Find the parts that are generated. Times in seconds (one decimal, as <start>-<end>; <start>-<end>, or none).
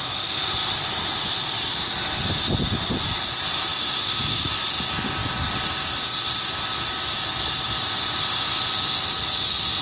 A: none